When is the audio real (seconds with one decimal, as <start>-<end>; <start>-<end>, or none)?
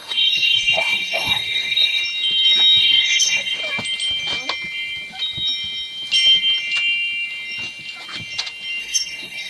2.0-2.8; 3.6-8.8